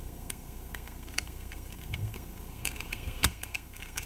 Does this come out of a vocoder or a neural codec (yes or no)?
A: yes